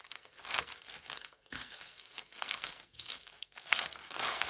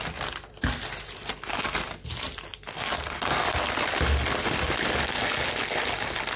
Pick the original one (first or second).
second